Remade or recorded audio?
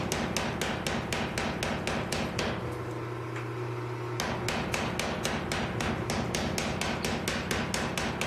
recorded